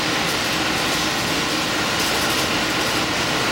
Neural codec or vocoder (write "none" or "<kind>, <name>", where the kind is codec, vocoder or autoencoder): none